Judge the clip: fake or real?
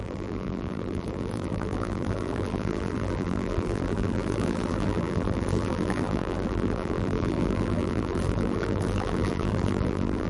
fake